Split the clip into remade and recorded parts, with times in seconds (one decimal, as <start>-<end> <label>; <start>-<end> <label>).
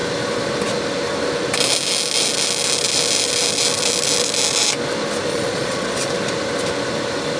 0.0-5.3 recorded; 5.3-6.1 remade; 6.1-7.4 recorded